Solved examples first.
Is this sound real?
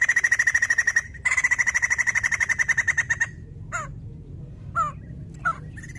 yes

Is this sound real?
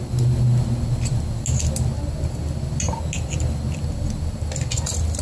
yes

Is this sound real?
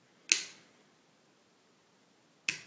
yes